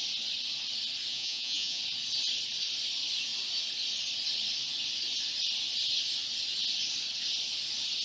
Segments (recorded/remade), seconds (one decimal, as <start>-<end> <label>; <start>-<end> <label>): 0.0-1.1 recorded; 1.1-1.8 remade; 1.8-8.0 recorded